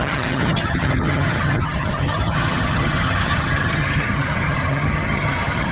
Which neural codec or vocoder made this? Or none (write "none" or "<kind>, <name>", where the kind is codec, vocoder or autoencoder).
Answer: vocoder, HiFi-GAN